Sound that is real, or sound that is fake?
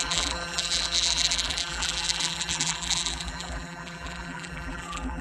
fake